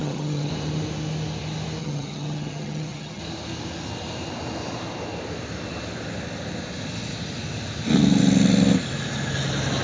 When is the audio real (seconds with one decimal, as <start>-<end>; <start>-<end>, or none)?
0.5-1.8; 3.2-9.8